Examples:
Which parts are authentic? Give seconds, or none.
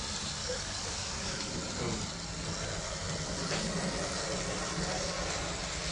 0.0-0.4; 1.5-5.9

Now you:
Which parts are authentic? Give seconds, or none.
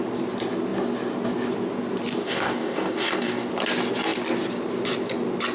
0.0-2.2; 3.5-5.5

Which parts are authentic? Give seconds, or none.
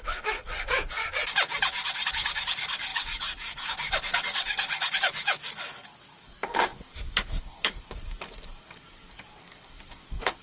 1.0-2.1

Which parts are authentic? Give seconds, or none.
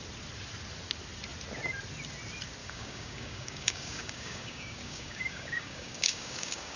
0.0-2.6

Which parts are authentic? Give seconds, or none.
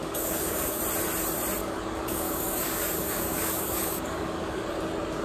0.8-1.6; 4.7-5.2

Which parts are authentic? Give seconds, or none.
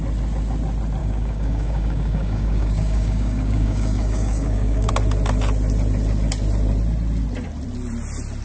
0.0-1.0; 4.9-8.4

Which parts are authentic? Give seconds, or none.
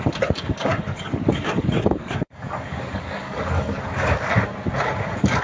4.5-5.0